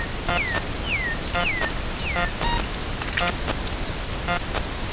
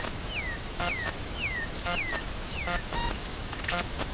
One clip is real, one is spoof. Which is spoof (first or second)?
second